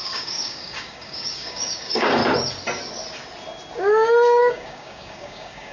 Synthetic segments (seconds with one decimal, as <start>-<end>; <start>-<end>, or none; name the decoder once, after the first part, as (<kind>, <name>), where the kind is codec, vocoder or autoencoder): 0.0-2.2 (codec, DAC); 4.4-5.7